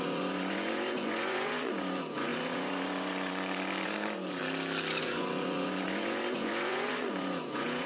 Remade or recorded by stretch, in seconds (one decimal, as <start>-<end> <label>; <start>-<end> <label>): 0.0-4.4 remade; 4.4-5.0 recorded; 5.0-7.9 remade